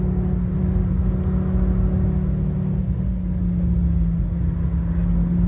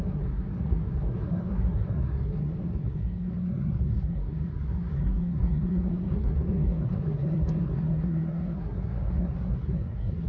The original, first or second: first